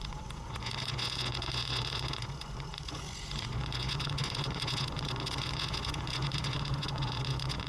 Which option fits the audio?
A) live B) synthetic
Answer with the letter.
B